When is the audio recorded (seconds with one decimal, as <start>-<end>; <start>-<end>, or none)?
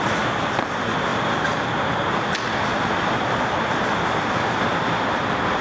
0.0-5.6